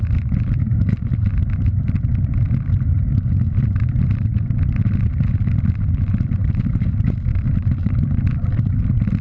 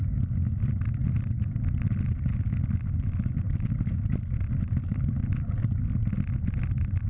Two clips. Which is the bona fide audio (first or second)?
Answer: second